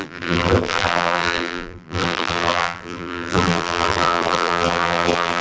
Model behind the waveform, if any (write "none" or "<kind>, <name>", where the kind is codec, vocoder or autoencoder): vocoder, BigVGAN v2